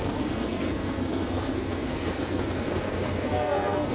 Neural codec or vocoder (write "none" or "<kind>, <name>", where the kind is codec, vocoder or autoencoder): codec, SNAC